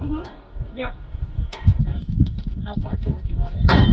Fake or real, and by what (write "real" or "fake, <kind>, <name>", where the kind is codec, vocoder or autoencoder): fake, codec, DAC